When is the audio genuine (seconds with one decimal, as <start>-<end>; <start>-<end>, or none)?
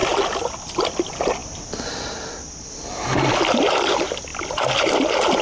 0.0-5.4